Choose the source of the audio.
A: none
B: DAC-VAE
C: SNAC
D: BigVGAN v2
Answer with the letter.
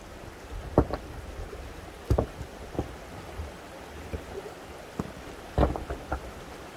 A